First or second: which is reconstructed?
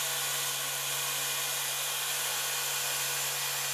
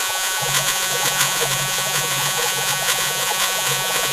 second